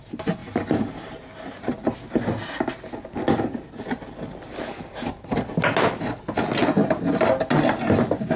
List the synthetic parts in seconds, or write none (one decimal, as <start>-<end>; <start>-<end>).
none